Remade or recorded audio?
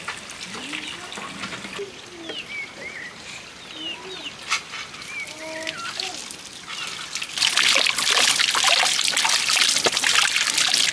recorded